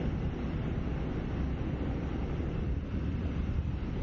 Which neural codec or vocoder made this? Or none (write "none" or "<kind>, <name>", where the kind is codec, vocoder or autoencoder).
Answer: none